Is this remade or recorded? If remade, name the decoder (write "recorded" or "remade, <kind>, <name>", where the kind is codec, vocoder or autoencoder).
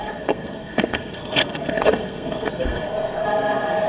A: remade, codec, SNAC